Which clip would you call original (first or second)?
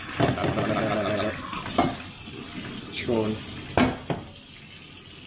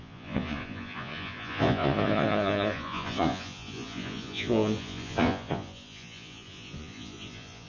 first